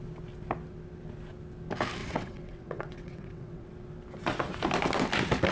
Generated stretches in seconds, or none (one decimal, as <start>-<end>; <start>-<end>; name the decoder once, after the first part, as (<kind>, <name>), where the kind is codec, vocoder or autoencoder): 2.0-3.7 (vocoder, WaveNeXt)